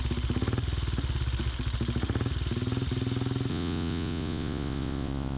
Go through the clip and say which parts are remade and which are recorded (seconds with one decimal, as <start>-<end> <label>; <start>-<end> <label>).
0.0-3.5 recorded; 3.5-5.4 remade